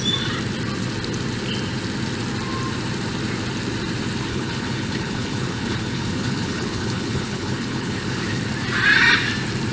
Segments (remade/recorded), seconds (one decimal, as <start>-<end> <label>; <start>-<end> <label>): 0.0-4.3 recorded; 4.3-8.4 remade; 8.4-9.7 recorded